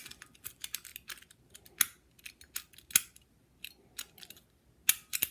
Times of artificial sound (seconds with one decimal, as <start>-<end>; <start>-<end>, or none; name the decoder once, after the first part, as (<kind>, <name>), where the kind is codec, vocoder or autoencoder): none